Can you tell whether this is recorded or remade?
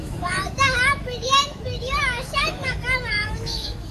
remade